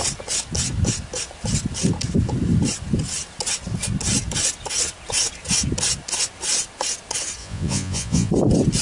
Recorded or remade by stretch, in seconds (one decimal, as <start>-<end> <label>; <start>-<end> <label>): 0.0-7.4 recorded; 7.4-8.3 remade; 8.3-8.8 recorded